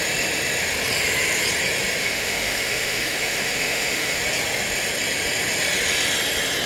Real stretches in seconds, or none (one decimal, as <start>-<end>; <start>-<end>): 0.0-2.0; 4.2-6.7